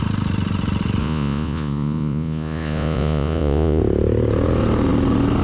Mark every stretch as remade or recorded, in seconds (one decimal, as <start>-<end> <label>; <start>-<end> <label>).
0.0-1.0 recorded; 1.0-3.8 remade; 3.8-5.4 recorded